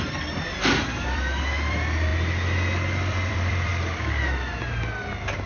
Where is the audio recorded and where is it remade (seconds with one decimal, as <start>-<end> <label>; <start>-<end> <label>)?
0.0-2.1 remade; 2.1-3.1 recorded; 3.1-3.7 remade; 3.7-5.1 recorded; 5.1-5.5 remade